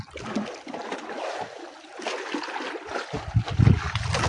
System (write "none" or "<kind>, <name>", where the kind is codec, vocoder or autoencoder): none